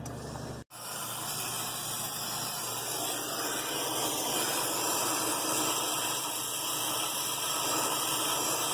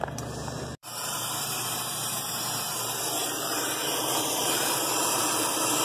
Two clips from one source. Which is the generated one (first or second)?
second